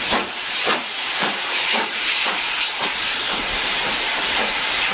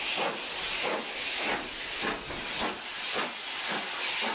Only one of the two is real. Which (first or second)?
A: second